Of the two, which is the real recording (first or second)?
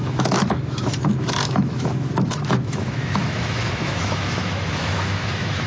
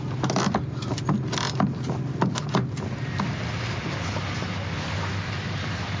second